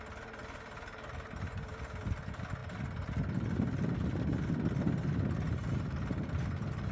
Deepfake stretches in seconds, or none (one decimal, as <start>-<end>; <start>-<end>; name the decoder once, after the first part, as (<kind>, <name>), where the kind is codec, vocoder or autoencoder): none